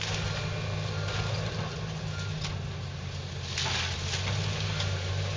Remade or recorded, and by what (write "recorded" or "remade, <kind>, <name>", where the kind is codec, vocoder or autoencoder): recorded